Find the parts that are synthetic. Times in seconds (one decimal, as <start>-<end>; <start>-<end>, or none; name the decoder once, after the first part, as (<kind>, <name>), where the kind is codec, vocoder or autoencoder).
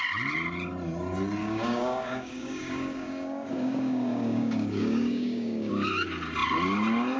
1.4-5.7 (codec, DAC)